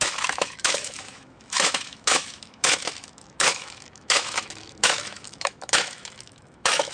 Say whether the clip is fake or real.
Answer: fake